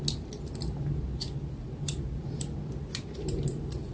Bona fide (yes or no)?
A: yes